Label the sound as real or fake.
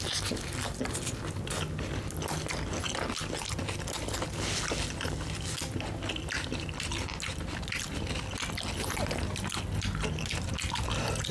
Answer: real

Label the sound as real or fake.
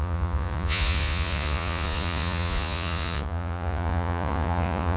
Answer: fake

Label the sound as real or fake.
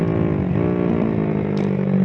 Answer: real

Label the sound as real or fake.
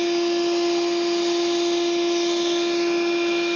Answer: real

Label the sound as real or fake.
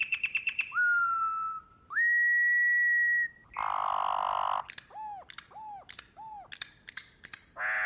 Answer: real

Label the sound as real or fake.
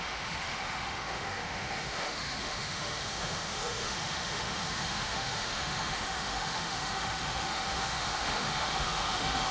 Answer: fake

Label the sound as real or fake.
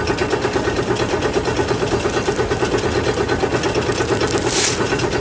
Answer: real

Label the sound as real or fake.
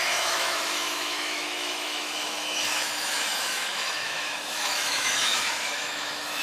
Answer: fake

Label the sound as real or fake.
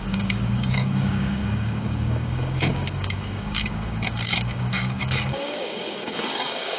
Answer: fake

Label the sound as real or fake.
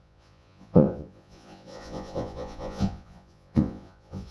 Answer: fake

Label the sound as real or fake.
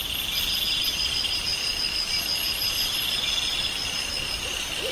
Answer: real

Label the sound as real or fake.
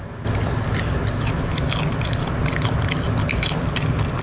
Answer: real